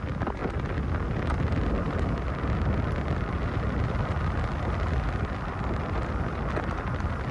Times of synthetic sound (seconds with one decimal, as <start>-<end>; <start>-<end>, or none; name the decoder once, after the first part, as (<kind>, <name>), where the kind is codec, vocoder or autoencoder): none